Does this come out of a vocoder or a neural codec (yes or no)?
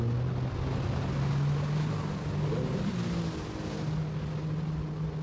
no